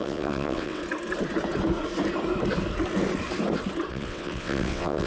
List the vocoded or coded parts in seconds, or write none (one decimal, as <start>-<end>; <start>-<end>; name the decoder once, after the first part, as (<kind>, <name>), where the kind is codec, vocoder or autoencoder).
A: 0.0-0.8 (vocoder, WaveNeXt); 3.9-5.1